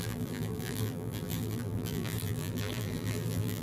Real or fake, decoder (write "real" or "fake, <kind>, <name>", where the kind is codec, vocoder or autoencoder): fake, vocoder, BigVGAN v2